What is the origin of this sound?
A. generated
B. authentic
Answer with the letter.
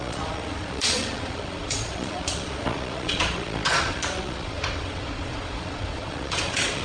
A